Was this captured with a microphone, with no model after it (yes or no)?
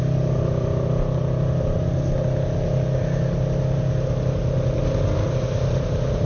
yes